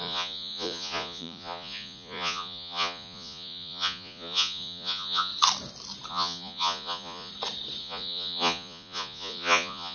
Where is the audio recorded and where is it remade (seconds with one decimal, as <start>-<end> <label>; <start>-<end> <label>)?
0.0-5.3 remade; 5.3-6.1 recorded; 6.1-7.3 remade; 7.3-7.8 recorded; 7.8-9.9 remade